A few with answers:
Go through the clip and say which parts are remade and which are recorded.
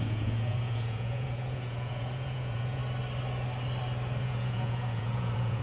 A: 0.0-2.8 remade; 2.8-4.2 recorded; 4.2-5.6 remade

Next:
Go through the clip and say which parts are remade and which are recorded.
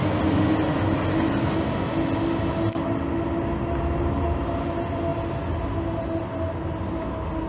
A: 0.0-7.5 recorded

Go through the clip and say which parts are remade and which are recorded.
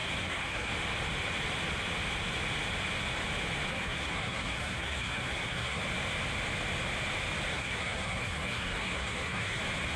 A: 0.0-0.7 remade; 0.7-3.7 recorded; 3.7-5.8 remade; 5.8-7.5 recorded; 7.5-9.6 remade; 9.6-10.0 recorded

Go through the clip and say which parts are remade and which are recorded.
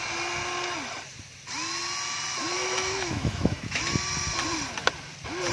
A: 0.0-2.5 recorded; 2.5-3.8 remade; 3.8-5.5 recorded